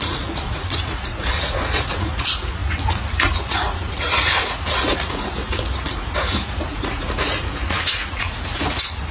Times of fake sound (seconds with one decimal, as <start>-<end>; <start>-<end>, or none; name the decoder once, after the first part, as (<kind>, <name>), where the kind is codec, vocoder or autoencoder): 0.0-9.1 (vocoder, Vocos)